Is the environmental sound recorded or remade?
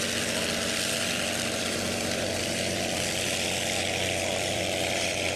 remade